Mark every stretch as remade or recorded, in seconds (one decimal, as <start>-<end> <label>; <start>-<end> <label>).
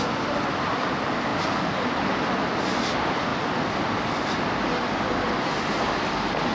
0.0-6.5 recorded